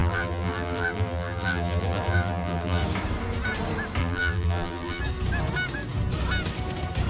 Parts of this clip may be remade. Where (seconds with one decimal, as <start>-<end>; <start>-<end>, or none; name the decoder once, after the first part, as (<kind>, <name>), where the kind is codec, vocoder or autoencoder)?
0.0-2.8 (vocoder, BigVGAN v2); 4.0-5.0